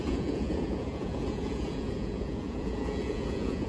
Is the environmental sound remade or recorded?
remade